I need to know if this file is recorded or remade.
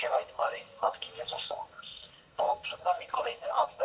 remade